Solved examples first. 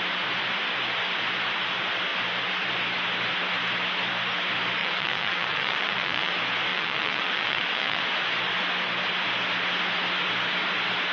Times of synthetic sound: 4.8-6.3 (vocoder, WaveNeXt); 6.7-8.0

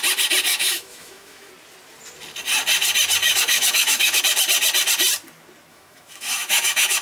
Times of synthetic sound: 0.5-1.5 (autoencoder, DAC-VAE); 3.2-4.2; 5.7-7.0

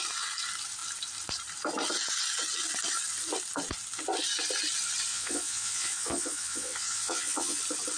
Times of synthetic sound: 5.1-7.6 (vocoder, Vocos)

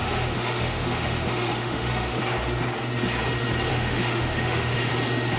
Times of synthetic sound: 0.0-2.2 (autoencoder, DAC-VAE); 3.7-4.9

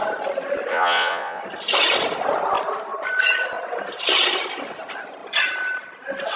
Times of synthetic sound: 0.7-1.4 (vocoder, Vocos)

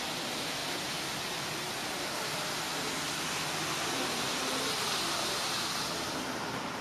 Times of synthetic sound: none

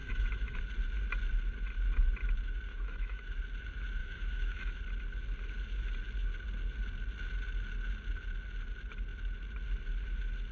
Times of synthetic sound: 0.0-0.6 (autoencoder, DAC-VAE); 2.7-3.4; 4.0-4.8